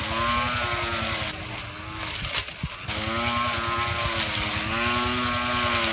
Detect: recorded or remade recorded